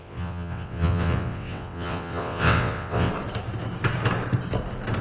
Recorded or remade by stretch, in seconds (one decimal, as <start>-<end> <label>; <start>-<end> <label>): 0.0-3.1 remade; 3.1-5.0 recorded